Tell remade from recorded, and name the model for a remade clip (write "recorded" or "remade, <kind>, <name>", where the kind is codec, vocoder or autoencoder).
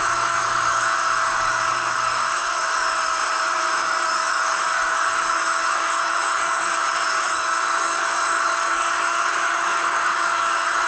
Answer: remade, codec, DAC